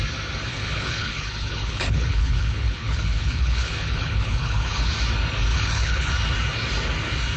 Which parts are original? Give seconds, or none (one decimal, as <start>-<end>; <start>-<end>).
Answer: 0.0-0.5; 4.9-5.5; 6.1-7.4